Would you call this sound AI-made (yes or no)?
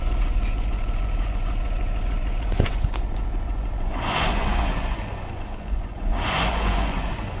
yes